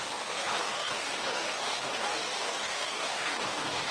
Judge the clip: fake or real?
fake